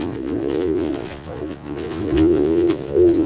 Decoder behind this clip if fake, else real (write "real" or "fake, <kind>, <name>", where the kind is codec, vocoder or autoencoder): fake, vocoder, Vocos